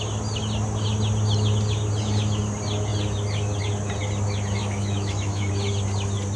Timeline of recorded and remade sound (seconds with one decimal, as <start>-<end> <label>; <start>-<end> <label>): 0.0-4.6 recorded; 4.6-5.5 remade; 5.5-6.4 recorded